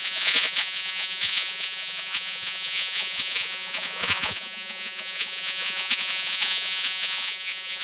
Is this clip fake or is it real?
fake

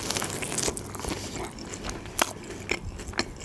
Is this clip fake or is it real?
real